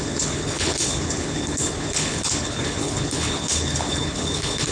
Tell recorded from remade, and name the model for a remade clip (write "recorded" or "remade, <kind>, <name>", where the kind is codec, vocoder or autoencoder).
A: remade, codec, HILCodec